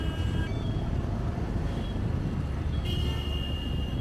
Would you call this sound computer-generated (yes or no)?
no